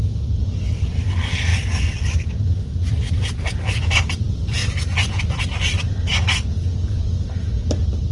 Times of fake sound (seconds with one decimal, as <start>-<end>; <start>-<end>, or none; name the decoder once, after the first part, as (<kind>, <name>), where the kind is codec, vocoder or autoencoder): 0.0-1.5 (vocoder, BigVGAN v2); 2.9-4.6; 5.2-6.1; 7.4-8.1